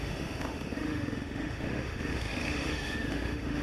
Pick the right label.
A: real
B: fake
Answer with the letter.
B